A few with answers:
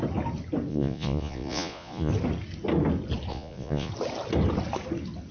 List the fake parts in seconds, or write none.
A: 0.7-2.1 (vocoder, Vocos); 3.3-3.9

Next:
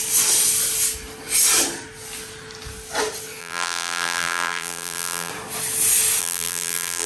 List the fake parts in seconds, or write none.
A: 3.4-5.3 (vocoder, BigVGAN v2); 6.2-7.1

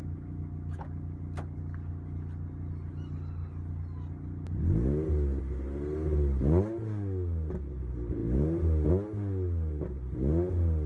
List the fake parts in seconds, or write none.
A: none

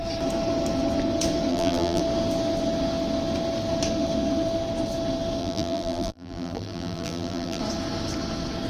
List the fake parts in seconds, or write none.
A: 1.5-2.0 (vocoder, BigVGAN v2); 5.4-7.6

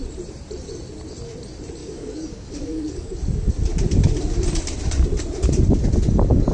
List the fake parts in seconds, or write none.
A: 1.8-3.2 (codec, DAC)

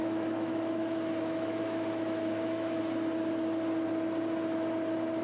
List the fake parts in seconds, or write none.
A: 0.0-2.8 (autoencoder, DAC-VAE)

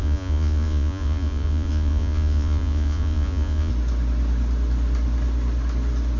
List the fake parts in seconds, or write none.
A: 0.0-3.7 (vocoder, Vocos)